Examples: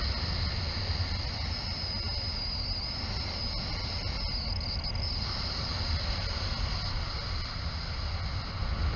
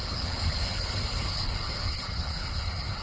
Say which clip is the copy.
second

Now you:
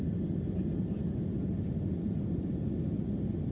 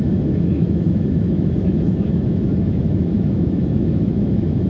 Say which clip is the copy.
second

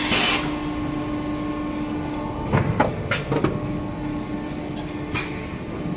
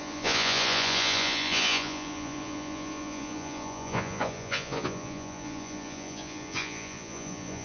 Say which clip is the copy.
second